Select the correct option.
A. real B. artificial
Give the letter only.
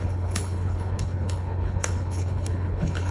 B